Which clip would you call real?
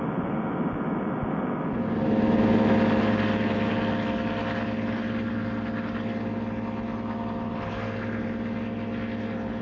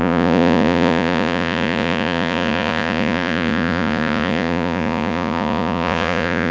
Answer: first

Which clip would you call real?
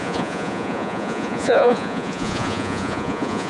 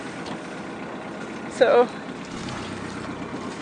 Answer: second